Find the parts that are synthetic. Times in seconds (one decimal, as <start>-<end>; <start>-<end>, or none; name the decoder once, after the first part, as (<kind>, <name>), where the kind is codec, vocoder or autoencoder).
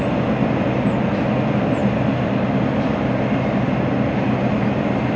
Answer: none